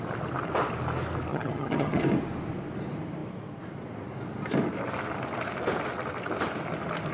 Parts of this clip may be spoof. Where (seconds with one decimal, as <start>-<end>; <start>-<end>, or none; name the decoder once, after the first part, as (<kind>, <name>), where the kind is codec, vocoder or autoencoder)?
1.3-2.0 (vocoder, HiFi-GAN)